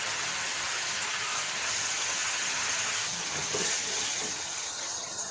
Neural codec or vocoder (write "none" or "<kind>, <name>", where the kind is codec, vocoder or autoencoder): vocoder, HiFi-GAN